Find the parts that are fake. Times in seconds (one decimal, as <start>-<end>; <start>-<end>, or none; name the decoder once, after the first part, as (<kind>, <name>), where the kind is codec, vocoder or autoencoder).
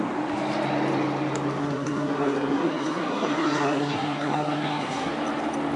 1.6-5.1 (codec, SNAC)